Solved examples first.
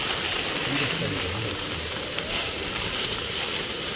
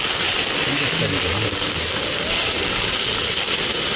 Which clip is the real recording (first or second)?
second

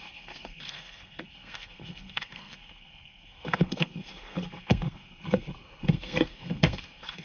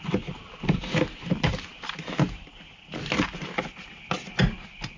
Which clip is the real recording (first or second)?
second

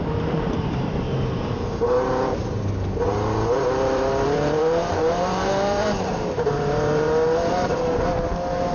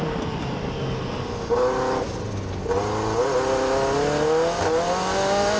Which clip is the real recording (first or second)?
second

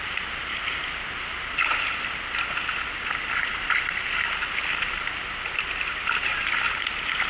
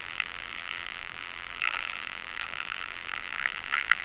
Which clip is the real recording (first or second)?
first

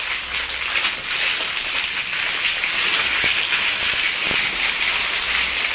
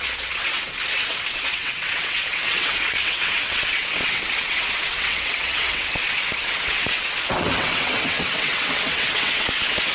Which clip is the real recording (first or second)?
first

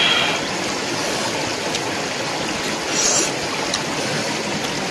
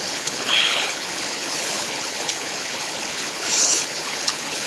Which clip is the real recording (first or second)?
first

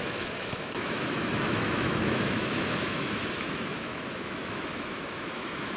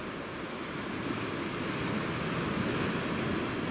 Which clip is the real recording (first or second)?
second